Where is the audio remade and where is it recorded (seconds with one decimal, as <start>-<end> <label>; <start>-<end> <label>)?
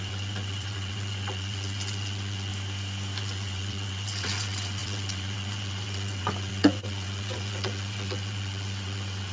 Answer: 0.0-2.5 remade; 2.5-3.2 recorded; 3.2-9.3 remade